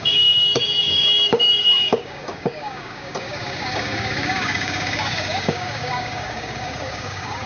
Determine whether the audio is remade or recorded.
remade